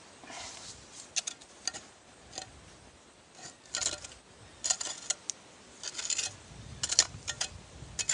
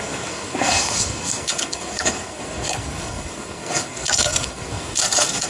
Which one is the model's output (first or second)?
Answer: second